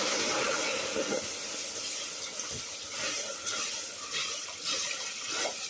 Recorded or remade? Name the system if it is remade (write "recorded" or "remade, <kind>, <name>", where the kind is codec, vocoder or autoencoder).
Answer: recorded